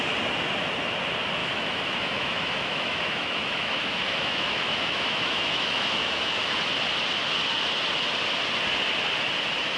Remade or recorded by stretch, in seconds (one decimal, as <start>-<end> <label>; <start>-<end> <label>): 0.0-1.4 recorded; 1.4-6.4 remade; 6.4-9.8 recorded